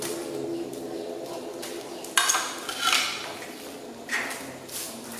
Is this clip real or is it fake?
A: real